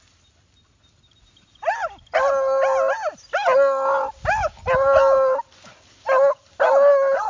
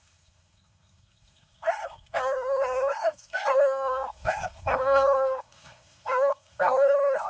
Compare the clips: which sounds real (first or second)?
first